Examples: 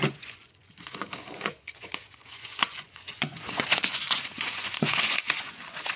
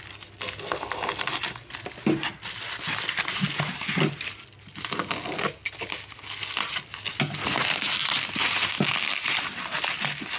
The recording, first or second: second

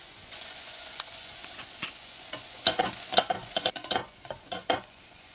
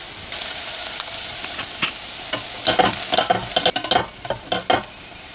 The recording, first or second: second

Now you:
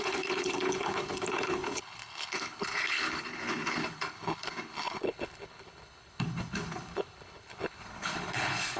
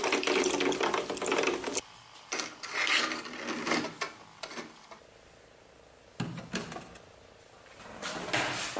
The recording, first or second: second